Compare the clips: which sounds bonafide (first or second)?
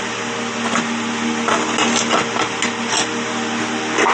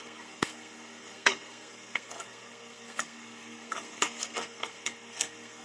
first